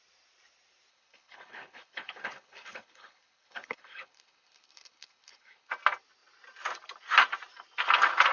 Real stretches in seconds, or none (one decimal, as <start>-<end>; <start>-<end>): 0.0-0.9; 5.7-8.3